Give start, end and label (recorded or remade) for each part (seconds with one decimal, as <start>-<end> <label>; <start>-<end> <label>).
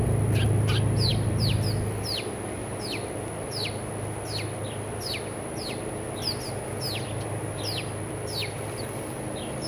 0.0-9.7 recorded